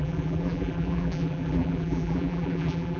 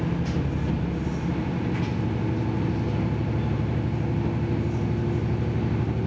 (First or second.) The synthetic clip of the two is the first